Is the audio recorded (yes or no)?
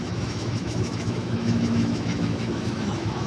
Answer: no